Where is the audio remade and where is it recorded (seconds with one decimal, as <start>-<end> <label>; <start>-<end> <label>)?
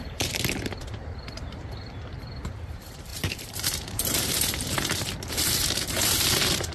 0.0-6.7 remade